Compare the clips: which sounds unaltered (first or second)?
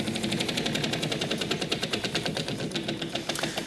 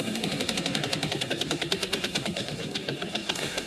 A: first